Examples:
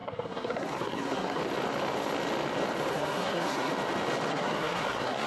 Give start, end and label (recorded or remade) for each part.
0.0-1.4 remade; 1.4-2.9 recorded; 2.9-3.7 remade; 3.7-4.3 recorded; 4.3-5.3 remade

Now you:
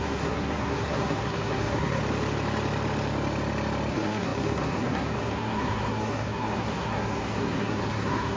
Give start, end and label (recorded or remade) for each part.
0.0-2.0 remade; 2.0-3.9 recorded; 3.9-8.4 remade

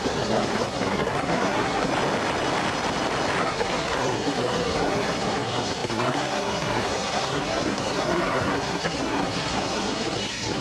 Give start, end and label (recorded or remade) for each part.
0.0-1.9 remade; 1.9-3.4 recorded; 3.4-10.6 remade

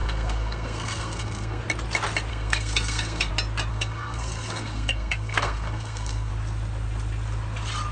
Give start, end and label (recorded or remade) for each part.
0.0-1.6 remade; 1.6-2.3 recorded; 2.3-3.3 remade; 3.3-3.7 recorded; 3.7-6.3 remade; 6.3-7.9 recorded

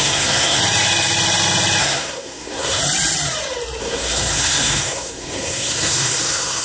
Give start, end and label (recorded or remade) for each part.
0.0-0.6 remade; 0.6-1.8 recorded; 1.8-2.8 remade; 2.8-3.8 recorded; 3.8-6.6 remade

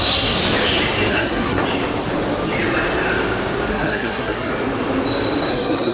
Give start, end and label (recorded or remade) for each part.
0.0-0.4 remade; 0.4-1.1 recorded; 1.1-1.6 remade; 1.6-3.7 recorded; 3.7-4.5 remade; 4.5-5.5 recorded; 5.5-5.9 remade

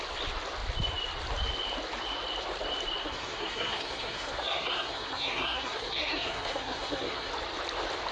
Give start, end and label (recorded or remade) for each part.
0.0-3.0 recorded; 3.0-7.3 remade; 7.3-8.1 recorded